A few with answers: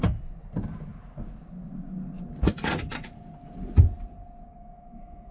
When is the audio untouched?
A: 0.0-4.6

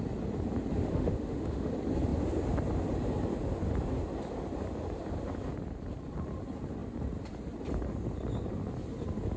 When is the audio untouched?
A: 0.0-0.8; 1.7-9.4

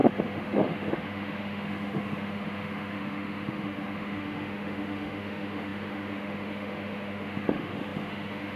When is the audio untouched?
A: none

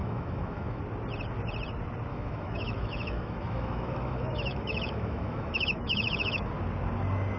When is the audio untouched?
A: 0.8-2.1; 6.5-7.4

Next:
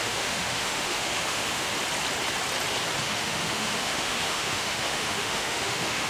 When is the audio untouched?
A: 1.7-3.0

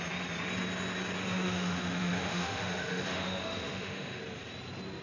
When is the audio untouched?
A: 0.0-1.2; 4.2-5.0